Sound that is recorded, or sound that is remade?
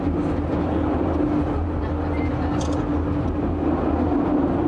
recorded